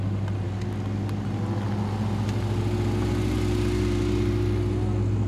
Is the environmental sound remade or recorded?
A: recorded